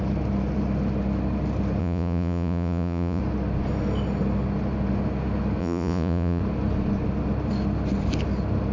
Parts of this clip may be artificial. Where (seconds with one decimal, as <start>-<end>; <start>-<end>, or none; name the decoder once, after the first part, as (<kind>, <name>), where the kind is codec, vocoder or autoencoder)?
1.8-3.2 (vocoder, Vocos); 5.6-6.4